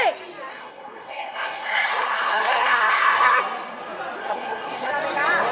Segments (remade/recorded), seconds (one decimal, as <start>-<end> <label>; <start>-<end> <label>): 0.0-0.5 recorded; 0.5-3.4 remade; 3.4-4.2 recorded; 4.2-4.9 remade; 4.9-5.5 recorded